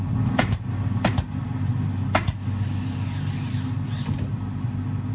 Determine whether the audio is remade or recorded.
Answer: recorded